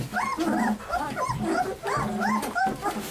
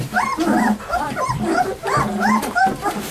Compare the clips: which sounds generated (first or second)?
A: second